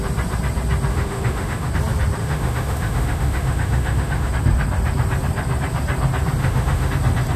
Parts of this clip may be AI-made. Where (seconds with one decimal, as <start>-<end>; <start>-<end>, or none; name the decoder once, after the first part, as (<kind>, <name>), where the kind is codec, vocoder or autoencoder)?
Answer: 0.9-1.7 (autoencoder, DAC-VAE); 2.2-4.3; 6.4-6.9